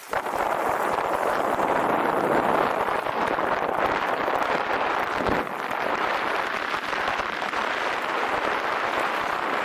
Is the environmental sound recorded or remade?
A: remade